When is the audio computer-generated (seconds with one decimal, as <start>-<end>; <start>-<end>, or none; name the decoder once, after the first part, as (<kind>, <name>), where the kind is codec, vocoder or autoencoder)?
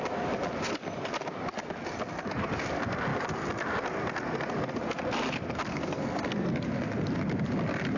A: 5.7-6.5 (codec, SNAC)